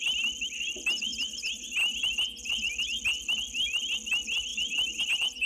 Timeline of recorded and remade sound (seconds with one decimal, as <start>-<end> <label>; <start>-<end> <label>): 0.0-1.1 recorded; 1.1-2.0 remade; 2.0-4.5 recorded; 4.5-5.0 remade; 5.0-5.5 recorded